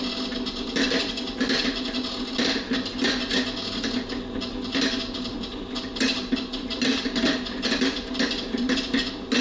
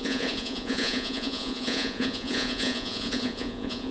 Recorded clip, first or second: first